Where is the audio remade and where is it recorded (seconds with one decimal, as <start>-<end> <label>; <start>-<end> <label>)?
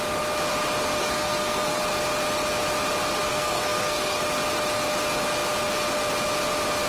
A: 0.0-1.0 recorded; 1.0-1.8 remade; 1.8-3.3 recorded; 3.3-4.2 remade; 4.2-6.9 recorded